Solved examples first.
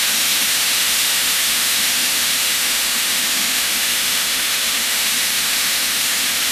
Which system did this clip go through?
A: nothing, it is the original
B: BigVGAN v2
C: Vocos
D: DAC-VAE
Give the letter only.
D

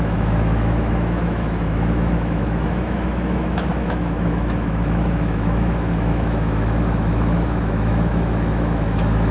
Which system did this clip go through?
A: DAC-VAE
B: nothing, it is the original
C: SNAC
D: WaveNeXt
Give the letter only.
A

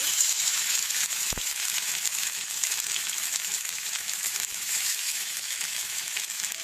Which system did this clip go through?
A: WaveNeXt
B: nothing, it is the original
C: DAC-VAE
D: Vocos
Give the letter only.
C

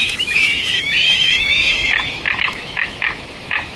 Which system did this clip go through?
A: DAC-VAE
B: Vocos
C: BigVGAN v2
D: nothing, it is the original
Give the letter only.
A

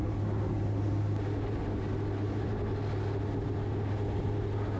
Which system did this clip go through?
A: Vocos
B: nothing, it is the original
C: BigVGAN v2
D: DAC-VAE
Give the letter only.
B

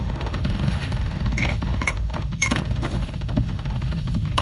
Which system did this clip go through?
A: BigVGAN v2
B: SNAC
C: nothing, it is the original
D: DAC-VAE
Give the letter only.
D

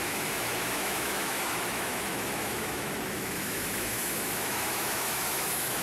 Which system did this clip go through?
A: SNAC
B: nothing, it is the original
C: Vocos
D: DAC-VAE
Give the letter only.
D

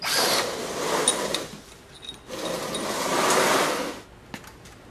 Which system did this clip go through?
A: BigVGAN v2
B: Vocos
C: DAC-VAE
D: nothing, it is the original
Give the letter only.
D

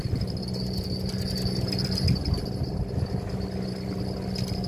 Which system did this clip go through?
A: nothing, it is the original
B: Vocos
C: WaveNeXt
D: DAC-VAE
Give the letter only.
A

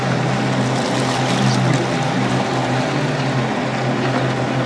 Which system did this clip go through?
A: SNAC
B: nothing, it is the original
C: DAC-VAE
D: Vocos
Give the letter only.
B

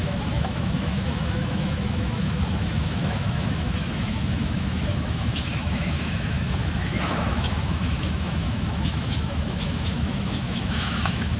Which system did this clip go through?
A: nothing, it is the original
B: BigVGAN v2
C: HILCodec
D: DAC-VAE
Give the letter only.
D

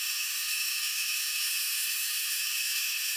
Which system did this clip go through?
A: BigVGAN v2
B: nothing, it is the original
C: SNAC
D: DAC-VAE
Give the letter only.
D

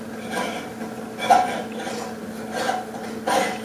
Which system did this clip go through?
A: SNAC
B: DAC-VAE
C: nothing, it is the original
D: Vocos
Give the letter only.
C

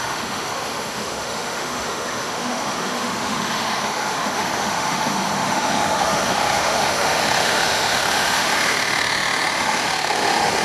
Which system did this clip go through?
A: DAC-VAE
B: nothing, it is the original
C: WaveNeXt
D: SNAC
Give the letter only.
A